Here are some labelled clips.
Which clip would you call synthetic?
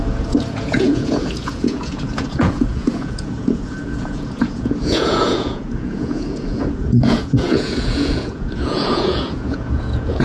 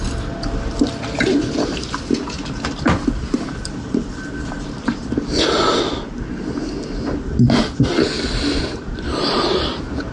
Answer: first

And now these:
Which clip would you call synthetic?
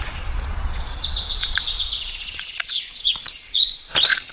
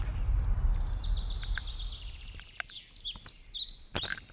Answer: first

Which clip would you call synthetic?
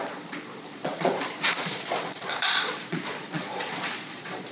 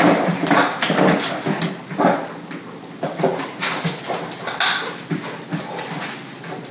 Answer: first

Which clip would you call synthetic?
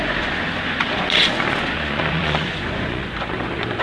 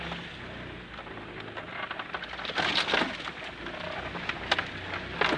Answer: first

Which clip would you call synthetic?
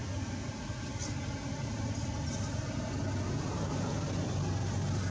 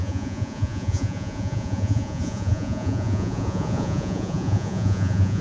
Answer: second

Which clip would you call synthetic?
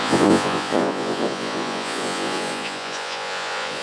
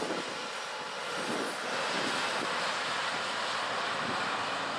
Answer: first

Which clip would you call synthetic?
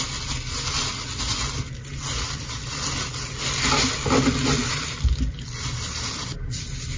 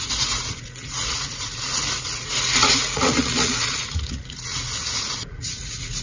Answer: second